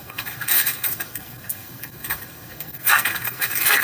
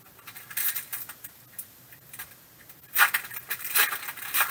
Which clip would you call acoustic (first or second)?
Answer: second